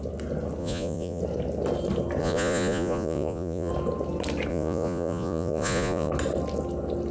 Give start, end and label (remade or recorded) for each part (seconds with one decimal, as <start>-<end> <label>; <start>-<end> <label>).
0.0-0.6 recorded; 0.6-1.2 remade; 1.2-2.2 recorded; 2.2-3.7 remade; 3.7-4.5 recorded; 4.5-6.1 remade; 6.1-7.1 recorded